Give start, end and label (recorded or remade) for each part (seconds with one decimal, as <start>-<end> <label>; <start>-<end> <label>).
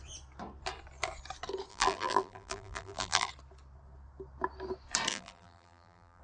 0.0-1.7 recorded; 1.7-3.3 remade; 3.3-5.1 recorded; 5.1-6.2 remade